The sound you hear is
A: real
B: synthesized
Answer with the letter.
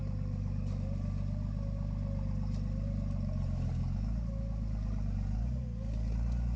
A